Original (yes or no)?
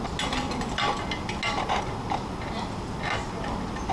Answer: yes